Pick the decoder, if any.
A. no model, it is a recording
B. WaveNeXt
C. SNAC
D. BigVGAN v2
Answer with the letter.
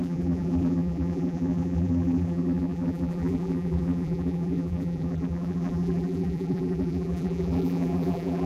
D